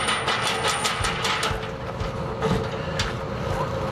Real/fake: real